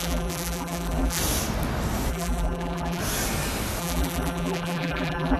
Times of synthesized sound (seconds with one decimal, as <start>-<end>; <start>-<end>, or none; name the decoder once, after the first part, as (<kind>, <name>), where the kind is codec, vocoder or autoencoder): 0.0-1.2 (vocoder, BigVGAN v2); 2.1-3.0; 3.8-5.4